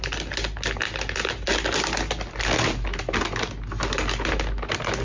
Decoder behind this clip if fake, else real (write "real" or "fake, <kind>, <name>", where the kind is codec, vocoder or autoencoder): real